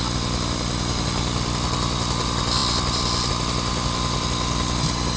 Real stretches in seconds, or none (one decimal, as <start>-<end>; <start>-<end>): 0.0-5.2

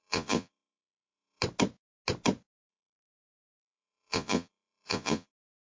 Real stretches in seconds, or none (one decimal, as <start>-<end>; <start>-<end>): 1.4-2.7; 5.3-5.8

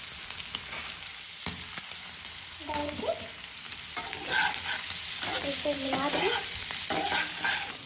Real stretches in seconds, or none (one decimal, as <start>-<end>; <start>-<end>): 0.0-7.9

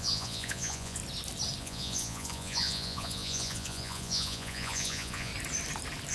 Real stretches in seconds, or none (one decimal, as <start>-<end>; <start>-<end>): 1.0-1.6; 5.3-6.1